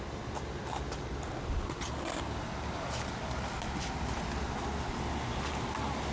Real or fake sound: real